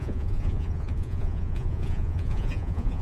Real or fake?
fake